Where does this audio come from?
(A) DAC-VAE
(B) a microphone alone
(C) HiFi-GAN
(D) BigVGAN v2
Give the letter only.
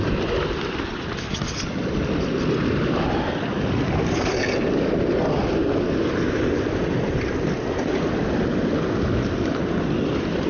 B